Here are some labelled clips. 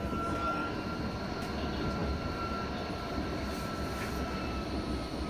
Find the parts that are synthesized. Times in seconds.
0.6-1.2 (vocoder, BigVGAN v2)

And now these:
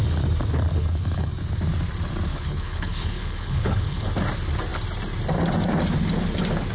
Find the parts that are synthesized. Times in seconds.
0.7-1.3 (codec, HILCodec); 2.3-4.1

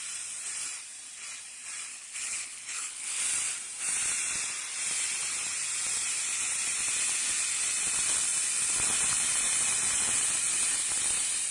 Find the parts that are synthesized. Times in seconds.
1.9-3.2 (codec, HILCodec)

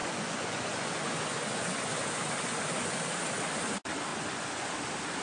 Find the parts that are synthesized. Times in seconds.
0.0-3.1 (vocoder, Vocos); 4.1-4.8

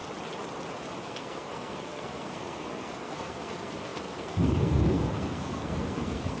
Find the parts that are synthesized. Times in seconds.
1.0-6.4 (codec, SNAC)

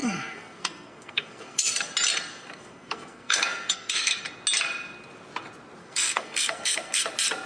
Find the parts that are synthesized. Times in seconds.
0.0-1.9 (codec, SNAC); 2.3-4.2; 5.8-7.1